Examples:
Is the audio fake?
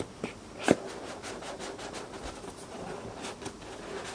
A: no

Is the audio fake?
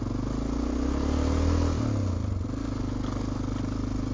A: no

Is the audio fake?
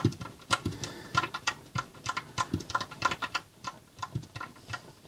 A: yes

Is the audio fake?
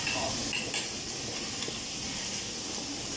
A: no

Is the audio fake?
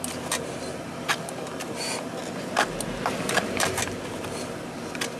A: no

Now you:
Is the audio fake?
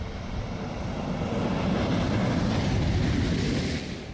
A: no